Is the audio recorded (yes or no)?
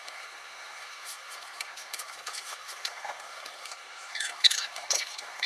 no